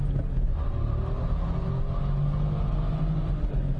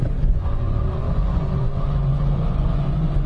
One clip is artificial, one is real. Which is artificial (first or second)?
second